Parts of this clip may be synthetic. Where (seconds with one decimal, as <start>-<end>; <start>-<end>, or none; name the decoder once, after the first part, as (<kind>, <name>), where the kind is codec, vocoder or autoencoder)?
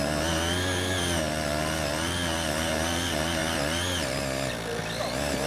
none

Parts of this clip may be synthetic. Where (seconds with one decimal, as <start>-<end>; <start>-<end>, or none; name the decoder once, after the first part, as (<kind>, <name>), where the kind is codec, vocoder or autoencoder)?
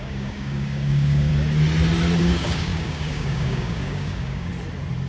0.0-1.3 (codec, DAC); 2.2-4.5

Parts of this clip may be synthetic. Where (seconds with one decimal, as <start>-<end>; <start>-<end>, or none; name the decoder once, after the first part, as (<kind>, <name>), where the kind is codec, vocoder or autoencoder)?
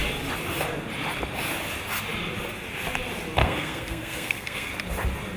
3.4-4.7 (codec, SNAC)